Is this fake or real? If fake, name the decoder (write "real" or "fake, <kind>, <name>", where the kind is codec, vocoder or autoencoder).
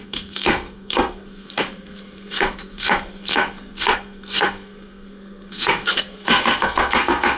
fake, codec, SNAC